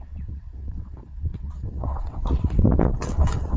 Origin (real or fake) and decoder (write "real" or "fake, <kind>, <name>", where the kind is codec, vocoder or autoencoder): fake, vocoder, WaveNeXt